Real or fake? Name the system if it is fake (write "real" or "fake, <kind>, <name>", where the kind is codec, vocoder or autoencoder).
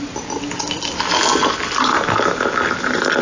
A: real